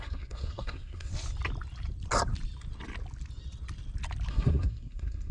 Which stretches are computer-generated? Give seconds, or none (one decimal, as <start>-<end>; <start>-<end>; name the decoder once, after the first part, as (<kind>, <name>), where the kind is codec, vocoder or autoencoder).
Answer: 0.0-1.1 (codec, SNAC); 4.3-5.3